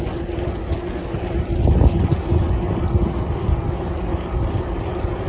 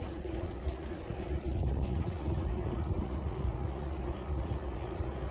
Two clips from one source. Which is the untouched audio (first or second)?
first